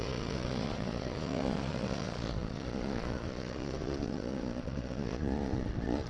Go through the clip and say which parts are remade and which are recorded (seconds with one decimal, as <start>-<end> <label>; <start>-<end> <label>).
0.0-6.1 remade